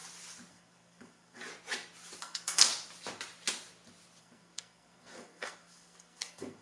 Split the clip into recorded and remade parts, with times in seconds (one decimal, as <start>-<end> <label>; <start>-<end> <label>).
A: 0.0-0.5 recorded; 0.5-1.4 remade; 1.4-2.2 recorded; 2.2-2.7 remade; 2.7-4.2 recorded; 4.2-6.6 remade